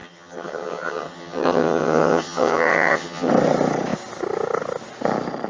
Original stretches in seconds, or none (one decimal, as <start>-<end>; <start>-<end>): 3.3-5.5